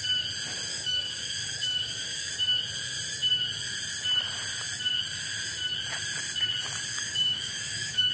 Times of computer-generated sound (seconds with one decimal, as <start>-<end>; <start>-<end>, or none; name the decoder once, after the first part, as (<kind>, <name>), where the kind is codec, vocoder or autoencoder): 0.7-2.3 (codec, DAC); 6.9-8.1